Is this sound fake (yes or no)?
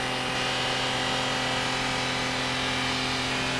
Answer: no